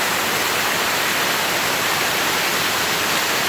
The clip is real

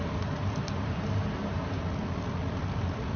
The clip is real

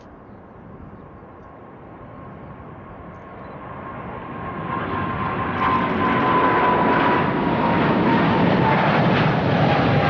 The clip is real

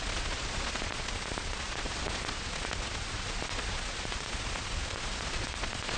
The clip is fake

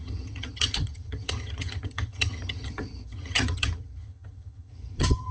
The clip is fake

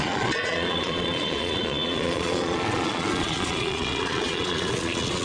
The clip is fake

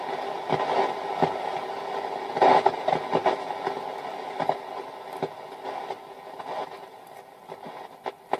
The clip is real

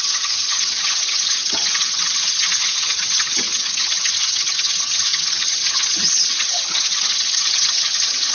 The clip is fake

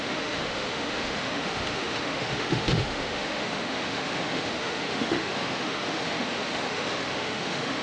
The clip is fake